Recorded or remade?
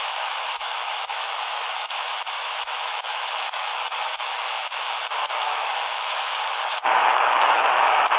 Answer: remade